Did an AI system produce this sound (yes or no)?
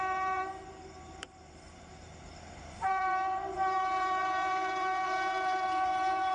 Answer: yes